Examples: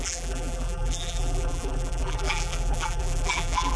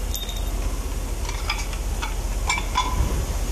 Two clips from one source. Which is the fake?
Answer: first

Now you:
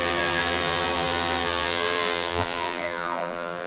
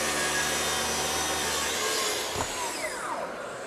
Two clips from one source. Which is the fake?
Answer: first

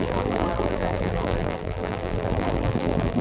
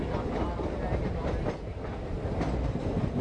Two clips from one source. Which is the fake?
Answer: first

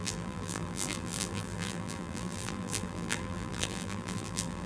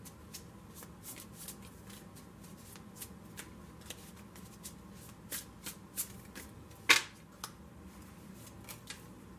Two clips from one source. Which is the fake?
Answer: first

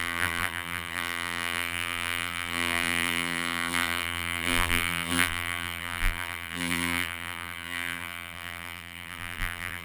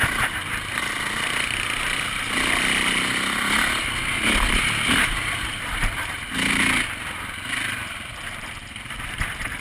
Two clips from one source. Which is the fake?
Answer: first